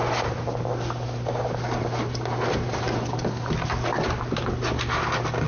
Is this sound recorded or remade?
recorded